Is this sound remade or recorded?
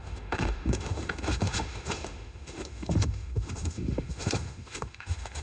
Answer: remade